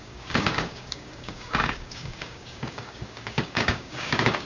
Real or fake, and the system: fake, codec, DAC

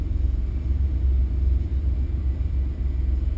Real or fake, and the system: real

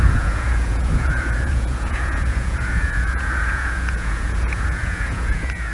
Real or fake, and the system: fake, vocoder, Vocos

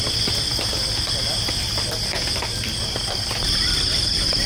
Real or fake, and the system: real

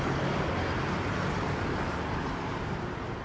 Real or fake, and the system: real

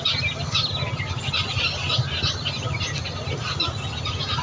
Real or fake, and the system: real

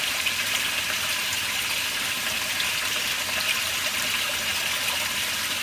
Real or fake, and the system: real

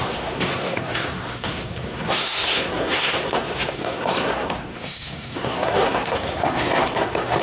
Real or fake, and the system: fake, codec, SNAC